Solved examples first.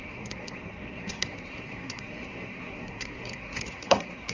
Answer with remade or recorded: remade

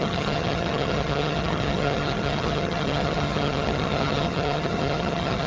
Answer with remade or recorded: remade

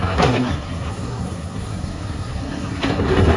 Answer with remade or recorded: remade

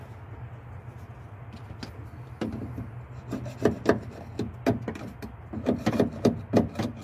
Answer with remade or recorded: recorded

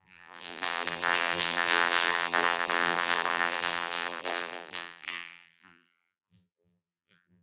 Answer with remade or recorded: remade